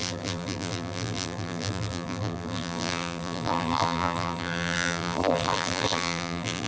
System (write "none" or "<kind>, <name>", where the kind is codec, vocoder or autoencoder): vocoder, BigVGAN v2